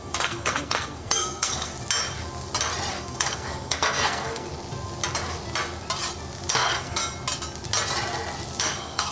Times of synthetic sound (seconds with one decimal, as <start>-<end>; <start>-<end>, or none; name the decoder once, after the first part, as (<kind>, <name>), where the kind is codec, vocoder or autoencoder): 0.0-1.7 (codec, SNAC); 2.9-4.5; 6.5-7.0; 8.6-9.1